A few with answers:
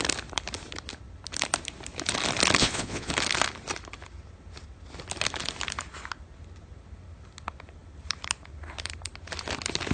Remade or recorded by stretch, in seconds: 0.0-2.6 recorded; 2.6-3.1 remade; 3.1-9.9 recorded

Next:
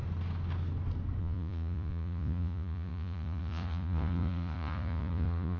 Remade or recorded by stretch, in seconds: 0.0-1.2 recorded; 1.2-5.6 remade

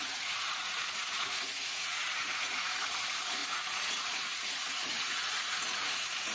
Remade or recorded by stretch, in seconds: 0.0-6.3 remade

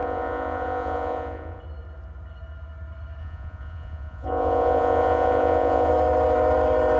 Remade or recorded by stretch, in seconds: 0.0-1.6 remade; 1.6-3.2 recorded; 3.2-5.9 remade; 5.9-7.0 recorded

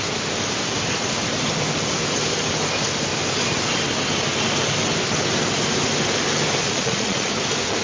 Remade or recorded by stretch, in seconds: 0.0-6.6 recorded; 6.6-7.3 remade; 7.3-7.8 recorded